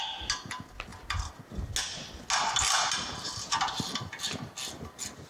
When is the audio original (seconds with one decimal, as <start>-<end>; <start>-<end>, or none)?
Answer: 0.0-5.3